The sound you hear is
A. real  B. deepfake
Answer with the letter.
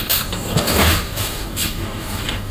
B